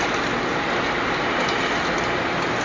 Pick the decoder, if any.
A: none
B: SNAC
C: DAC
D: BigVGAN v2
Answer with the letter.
A